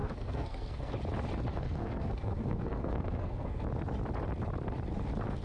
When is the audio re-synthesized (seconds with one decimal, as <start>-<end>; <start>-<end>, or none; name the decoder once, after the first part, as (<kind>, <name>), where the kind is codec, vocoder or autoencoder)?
0.0-0.9 (codec, SNAC); 1.5-3.6